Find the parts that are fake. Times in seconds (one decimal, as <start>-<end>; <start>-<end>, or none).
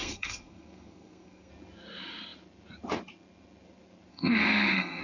0.0-1.5; 4.1-5.0